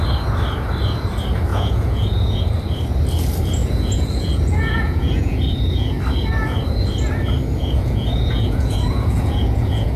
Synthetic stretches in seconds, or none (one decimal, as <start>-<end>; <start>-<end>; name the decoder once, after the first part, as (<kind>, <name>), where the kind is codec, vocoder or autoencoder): 1.5-2.4 (vocoder, Vocos); 3.6-6.0; 7.6-10.0